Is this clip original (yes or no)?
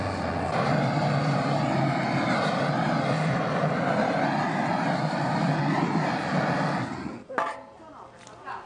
yes